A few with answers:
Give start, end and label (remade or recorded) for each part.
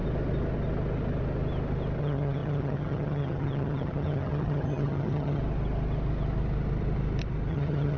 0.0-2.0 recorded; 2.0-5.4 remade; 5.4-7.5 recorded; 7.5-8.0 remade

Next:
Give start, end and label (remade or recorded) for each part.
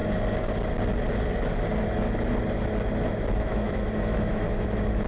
0.0-3.1 recorded; 3.1-5.1 remade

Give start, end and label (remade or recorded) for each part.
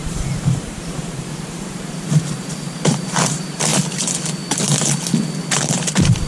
0.0-3.7 remade; 3.7-6.3 recorded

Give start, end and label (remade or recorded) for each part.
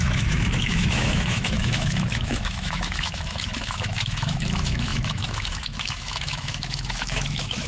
0.0-7.7 remade